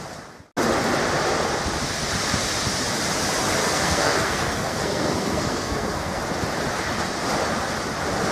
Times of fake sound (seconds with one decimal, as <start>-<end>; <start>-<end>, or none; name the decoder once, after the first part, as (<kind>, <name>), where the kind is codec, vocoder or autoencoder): 3.6-6.2 (codec, SNAC)